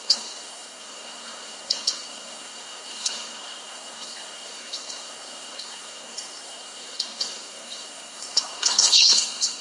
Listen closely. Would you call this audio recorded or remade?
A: remade